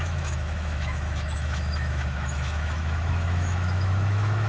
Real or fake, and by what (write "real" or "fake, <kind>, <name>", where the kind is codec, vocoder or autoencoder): fake, autoencoder, DAC-VAE